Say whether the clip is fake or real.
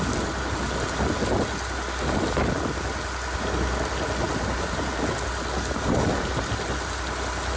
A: real